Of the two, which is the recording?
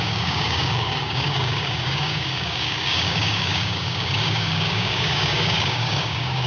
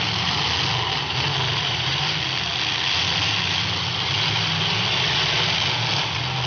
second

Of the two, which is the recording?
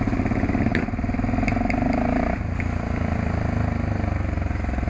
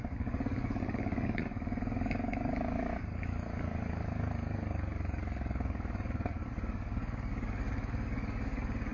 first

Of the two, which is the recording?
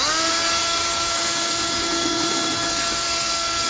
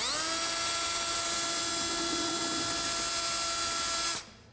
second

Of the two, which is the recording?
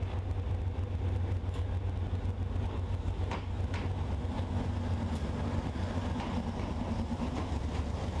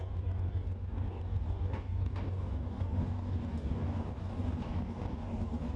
first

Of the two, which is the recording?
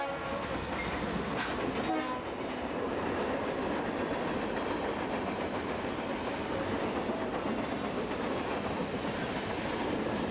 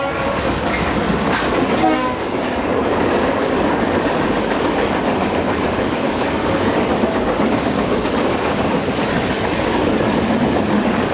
first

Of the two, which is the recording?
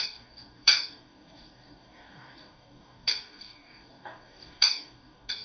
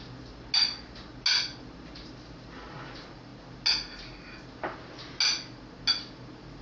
second